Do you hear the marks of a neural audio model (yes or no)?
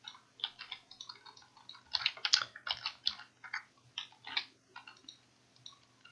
no